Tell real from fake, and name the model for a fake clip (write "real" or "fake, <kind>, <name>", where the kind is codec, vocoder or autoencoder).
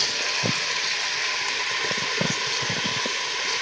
real